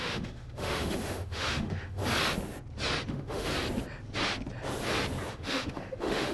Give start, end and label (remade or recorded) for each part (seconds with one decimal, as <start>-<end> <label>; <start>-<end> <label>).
0.0-2.0 remade; 2.0-3.1 recorded; 3.1-3.5 remade; 3.5-5.3 recorded; 5.3-6.3 remade